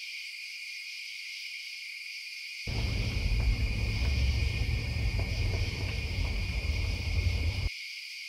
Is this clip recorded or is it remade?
remade